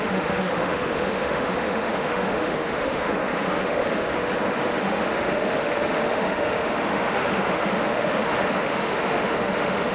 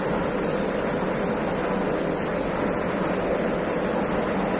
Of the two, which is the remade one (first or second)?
first